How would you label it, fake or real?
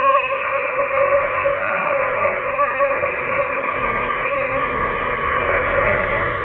fake